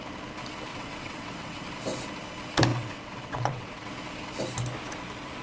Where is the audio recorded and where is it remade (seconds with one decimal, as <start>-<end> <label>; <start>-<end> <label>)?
0.0-0.7 recorded; 0.7-1.6 remade; 1.6-2.7 recorded; 2.7-3.9 remade; 3.9-5.4 recorded

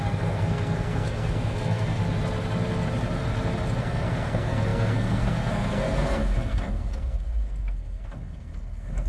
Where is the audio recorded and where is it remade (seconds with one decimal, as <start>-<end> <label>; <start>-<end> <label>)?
0.0-2.0 remade; 2.0-3.8 recorded; 3.8-9.1 remade

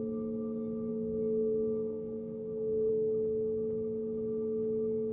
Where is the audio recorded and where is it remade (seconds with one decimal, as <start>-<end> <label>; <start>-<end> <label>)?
0.0-0.9 recorded; 0.9-2.9 remade; 2.9-5.1 recorded